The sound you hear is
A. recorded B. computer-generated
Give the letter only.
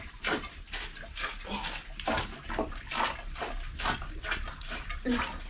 A